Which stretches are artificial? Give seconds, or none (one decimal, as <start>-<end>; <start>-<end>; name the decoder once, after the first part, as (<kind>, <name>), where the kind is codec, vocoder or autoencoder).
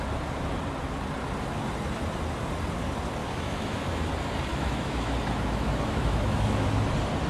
3.2-4.1 (autoencoder, DAC-VAE); 4.5-6.7